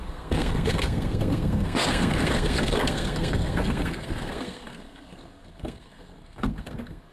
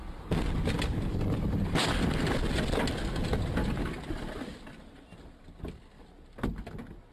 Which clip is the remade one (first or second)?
first